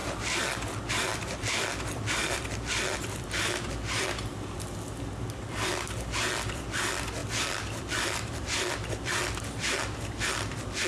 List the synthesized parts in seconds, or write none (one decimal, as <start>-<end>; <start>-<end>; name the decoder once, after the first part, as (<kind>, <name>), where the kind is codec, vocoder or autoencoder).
0.0-10.9 (vocoder, BigVGAN v2)